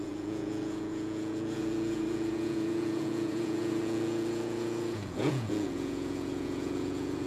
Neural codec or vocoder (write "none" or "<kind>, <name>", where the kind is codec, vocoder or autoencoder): vocoder, Vocos